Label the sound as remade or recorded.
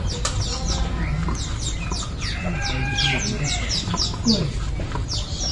recorded